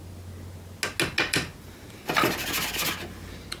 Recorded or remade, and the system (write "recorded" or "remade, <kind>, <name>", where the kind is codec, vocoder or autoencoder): recorded